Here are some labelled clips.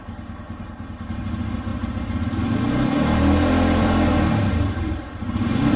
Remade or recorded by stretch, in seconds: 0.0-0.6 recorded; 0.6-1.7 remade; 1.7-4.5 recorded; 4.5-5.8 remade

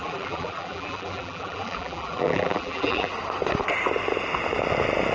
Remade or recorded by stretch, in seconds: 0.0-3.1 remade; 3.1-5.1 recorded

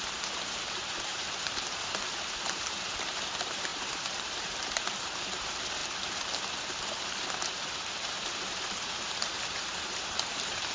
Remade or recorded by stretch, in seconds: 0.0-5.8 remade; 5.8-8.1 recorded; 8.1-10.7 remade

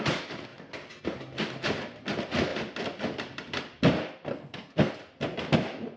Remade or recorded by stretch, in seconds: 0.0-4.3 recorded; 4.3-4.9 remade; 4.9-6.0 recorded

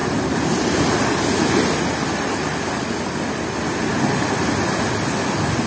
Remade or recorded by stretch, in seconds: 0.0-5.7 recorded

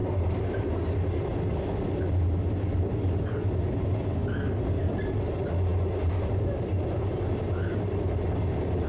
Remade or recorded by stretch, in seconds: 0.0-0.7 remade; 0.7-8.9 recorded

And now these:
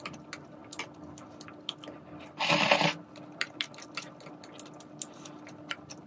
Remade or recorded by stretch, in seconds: 0.0-6.1 recorded

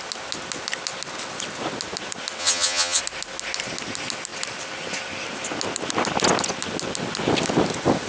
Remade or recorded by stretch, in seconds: 0.0-2.4 recorded; 2.4-3.0 remade; 3.0-8.1 recorded